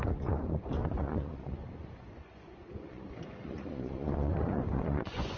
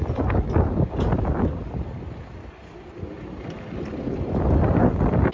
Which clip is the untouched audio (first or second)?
second